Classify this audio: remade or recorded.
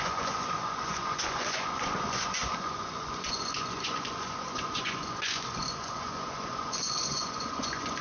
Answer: remade